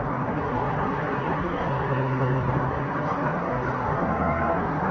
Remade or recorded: remade